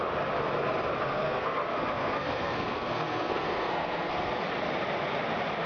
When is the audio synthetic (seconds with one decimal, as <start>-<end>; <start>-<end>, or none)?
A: 1.0-4.3